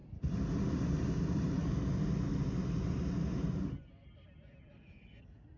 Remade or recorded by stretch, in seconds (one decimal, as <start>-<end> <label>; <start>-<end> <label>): 0.0-5.6 recorded